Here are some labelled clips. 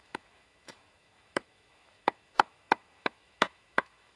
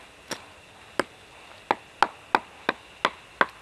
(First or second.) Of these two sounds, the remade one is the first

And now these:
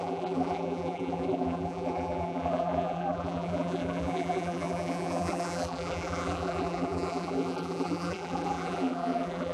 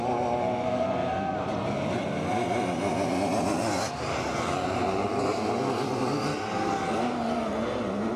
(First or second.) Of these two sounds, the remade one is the first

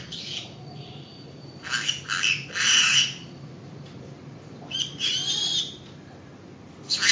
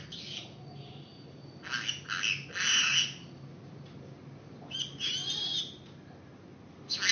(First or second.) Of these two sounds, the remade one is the first